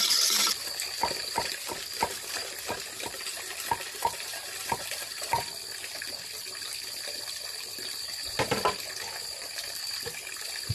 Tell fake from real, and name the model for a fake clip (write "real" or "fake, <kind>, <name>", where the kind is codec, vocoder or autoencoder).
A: fake, vocoder, BigVGAN v2